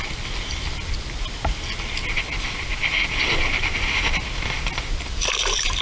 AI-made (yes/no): no